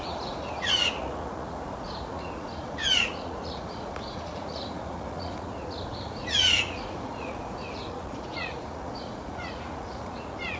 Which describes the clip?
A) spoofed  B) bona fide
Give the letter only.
A